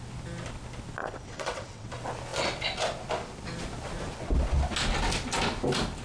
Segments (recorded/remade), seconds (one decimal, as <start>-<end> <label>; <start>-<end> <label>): 0.0-1.0 recorded; 1.0-1.9 remade; 1.9-6.0 recorded